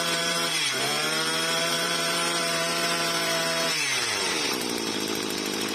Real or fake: fake